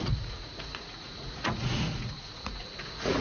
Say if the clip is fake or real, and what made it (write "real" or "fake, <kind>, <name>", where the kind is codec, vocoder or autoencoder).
fake, vocoder, Vocos